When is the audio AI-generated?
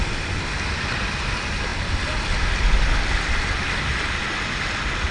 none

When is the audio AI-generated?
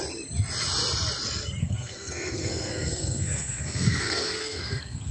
1.6-5.1 (codec, SNAC)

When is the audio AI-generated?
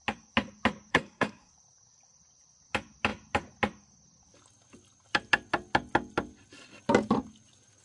0.9-1.5 (codec, SNAC)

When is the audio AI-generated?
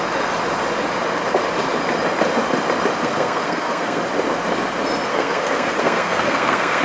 3.0-4.0 (codec, SNAC); 5.1-6.8